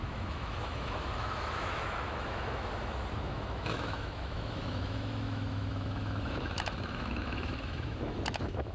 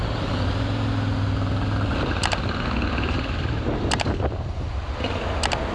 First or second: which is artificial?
first